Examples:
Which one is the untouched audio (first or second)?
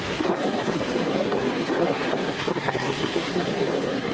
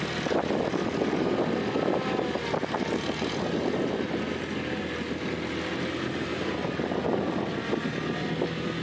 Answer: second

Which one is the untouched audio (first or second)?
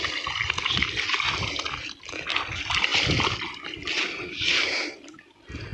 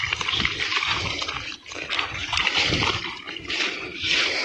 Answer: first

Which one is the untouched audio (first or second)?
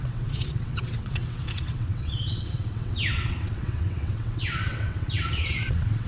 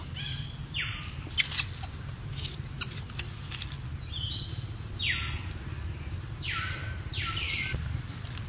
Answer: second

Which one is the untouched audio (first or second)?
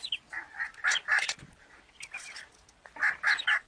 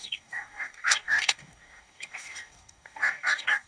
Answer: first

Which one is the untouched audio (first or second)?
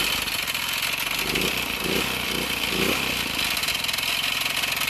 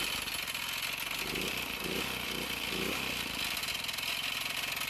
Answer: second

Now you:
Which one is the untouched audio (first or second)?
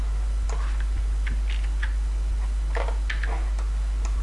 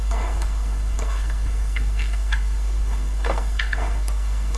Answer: first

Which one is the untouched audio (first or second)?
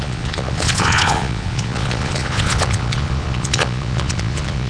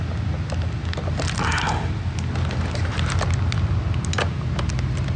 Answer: second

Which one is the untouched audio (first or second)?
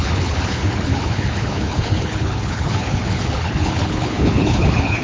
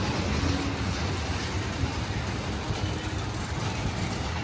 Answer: second